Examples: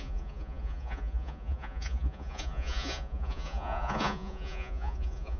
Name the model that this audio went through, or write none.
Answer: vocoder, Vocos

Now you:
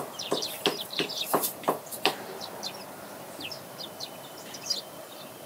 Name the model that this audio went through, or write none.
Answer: vocoder, BigVGAN v2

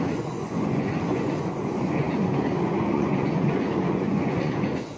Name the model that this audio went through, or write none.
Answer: vocoder, Vocos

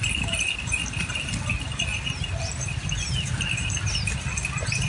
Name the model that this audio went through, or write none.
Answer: none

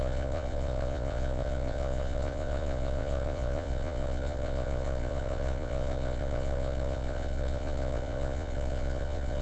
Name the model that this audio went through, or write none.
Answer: vocoder, Vocos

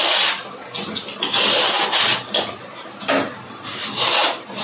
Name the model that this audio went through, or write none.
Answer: none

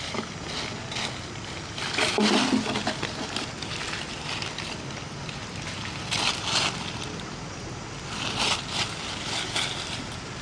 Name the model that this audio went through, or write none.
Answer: none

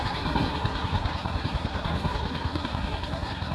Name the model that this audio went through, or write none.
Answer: codec, SNAC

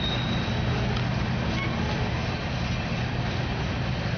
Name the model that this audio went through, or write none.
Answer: none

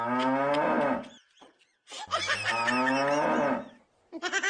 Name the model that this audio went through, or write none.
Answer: none